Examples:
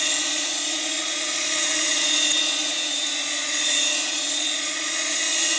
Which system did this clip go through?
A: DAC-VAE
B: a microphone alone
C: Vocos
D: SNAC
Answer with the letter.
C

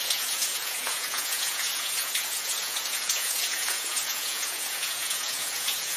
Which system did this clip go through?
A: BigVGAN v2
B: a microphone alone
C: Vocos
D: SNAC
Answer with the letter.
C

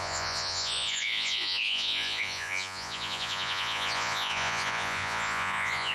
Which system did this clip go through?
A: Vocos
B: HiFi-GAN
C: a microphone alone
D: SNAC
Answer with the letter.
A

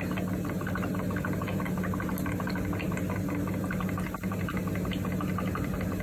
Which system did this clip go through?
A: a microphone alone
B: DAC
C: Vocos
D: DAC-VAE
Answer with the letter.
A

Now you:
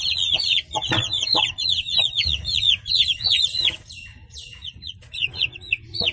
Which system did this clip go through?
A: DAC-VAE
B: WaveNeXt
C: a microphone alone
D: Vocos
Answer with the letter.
D